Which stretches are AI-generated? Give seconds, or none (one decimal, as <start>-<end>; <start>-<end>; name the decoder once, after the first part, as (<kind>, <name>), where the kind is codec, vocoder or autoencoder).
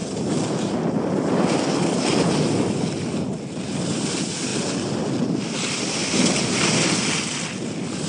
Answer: none